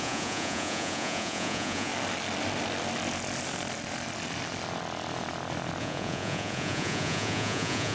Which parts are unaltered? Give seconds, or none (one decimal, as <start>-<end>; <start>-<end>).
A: 1.9-5.8